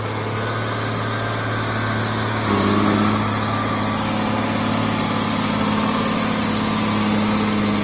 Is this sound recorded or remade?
recorded